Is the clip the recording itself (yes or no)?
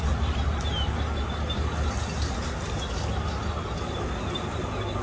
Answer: yes